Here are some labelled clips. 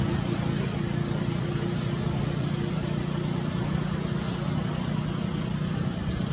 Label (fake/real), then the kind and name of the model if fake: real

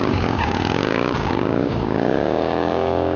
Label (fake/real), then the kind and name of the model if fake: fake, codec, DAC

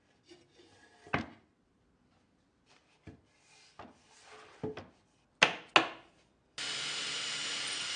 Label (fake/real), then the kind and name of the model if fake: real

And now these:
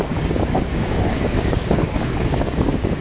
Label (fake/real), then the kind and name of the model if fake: fake, codec, DAC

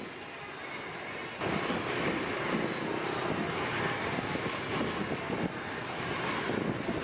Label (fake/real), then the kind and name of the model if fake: real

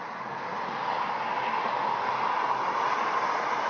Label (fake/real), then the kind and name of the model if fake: real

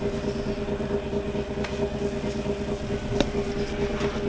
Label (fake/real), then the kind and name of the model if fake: real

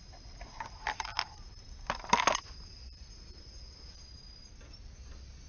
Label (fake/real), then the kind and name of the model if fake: real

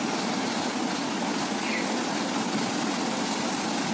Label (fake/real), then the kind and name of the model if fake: real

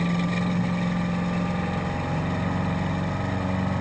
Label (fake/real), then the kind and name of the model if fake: real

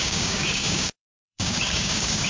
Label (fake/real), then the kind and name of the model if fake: fake, codec, DAC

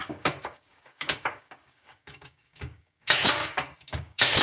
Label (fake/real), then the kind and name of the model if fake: fake, codec, DAC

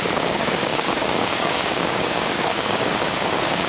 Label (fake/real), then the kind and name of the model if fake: fake, codec, DAC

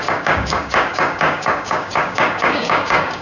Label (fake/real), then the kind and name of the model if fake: fake, codec, DAC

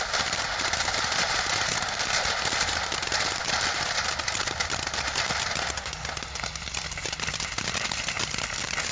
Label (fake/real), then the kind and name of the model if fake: real